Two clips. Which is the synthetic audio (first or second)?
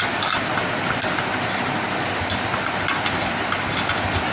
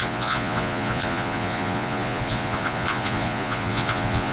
second